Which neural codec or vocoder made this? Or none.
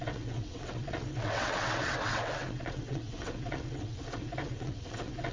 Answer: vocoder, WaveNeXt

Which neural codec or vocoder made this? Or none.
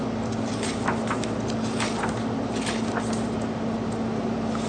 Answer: none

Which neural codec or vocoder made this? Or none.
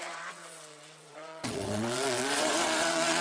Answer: vocoder, WaveNeXt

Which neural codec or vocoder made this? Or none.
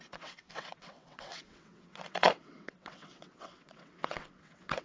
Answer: vocoder, WaveNeXt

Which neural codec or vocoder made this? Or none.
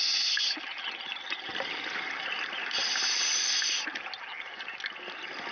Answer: none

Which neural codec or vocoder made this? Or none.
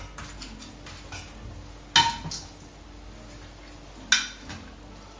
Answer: none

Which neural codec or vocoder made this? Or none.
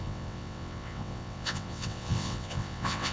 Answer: vocoder, WaveNeXt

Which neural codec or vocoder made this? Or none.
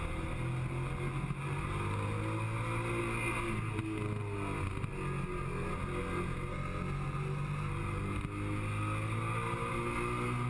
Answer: none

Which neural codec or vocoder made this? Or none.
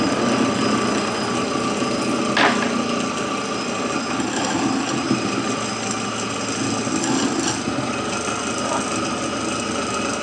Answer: none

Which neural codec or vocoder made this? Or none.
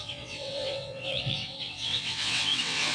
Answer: vocoder, WaveNeXt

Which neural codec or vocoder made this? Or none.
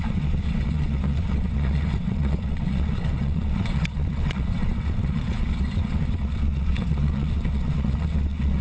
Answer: vocoder, WaveNeXt